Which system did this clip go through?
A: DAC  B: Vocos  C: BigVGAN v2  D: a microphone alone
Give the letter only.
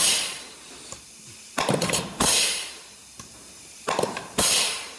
C